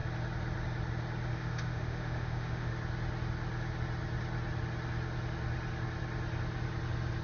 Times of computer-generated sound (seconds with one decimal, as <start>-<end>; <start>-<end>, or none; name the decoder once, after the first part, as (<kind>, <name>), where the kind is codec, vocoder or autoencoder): 1.3-2.7 (autoencoder, DAC-VAE)